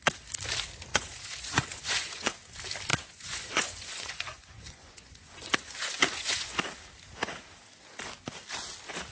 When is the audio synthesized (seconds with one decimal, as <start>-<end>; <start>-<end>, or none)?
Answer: 0.9-2.3; 2.9-6.6